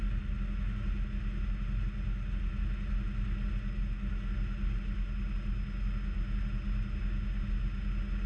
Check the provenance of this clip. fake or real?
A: real